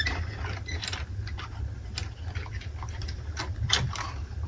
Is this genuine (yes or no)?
yes